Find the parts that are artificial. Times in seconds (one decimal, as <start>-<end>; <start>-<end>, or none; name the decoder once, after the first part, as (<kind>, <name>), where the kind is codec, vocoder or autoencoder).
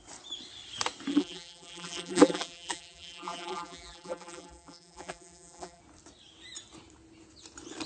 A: 1.1-5.8 (vocoder, BigVGAN v2)